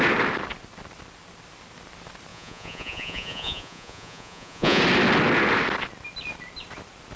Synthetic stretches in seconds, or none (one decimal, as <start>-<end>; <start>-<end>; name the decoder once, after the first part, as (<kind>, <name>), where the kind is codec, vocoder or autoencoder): 2.3-4.8 (vocoder, Vocos)